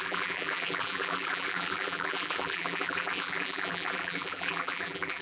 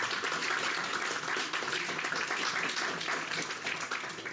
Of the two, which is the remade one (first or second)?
first